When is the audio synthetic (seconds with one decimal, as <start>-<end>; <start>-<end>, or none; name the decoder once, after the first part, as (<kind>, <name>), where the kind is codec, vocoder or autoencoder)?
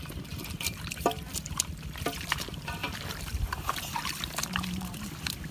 0.0-5.5 (vocoder, BigVGAN v2)